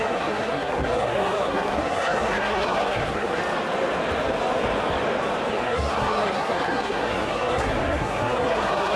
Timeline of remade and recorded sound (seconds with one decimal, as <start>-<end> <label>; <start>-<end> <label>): 0.0-3.4 remade; 3.4-5.5 recorded; 5.5-9.0 remade